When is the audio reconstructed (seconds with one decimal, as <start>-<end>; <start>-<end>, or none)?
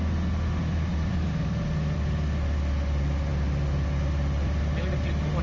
1.1-1.6